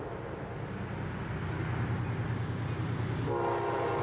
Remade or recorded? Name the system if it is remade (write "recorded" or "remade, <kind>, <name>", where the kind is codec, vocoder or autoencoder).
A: recorded